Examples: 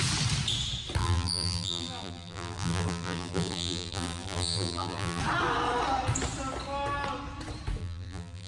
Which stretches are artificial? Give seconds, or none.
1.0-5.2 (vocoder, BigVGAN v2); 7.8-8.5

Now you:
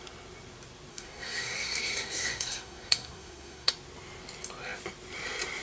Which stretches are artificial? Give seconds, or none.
0.9-3.7 (codec, SNAC)